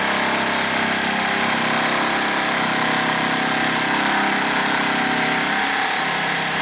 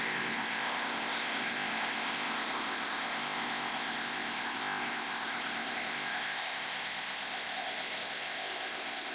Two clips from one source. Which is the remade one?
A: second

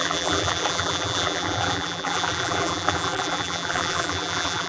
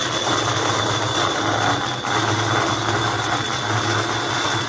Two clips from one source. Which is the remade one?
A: first